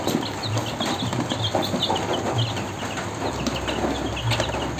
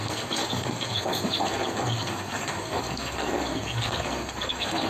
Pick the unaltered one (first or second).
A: first